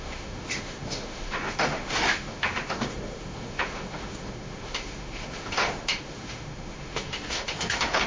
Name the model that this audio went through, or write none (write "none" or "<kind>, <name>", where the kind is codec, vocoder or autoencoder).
autoencoder, DAC-VAE